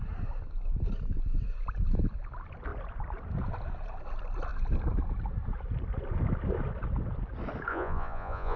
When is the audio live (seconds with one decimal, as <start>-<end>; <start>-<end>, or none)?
0.0-7.7